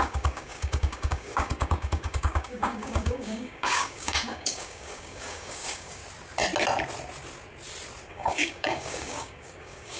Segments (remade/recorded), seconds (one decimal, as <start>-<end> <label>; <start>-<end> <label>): 0.0-6.0 remade; 6.0-8.1 recorded; 8.1-10.0 remade